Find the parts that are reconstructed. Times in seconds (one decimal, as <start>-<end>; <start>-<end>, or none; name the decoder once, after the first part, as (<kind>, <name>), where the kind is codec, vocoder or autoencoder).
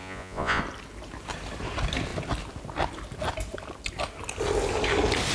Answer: 0.0-0.6 (vocoder, Vocos)